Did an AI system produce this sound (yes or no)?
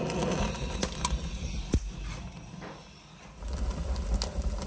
no